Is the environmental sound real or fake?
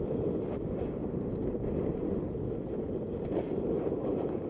real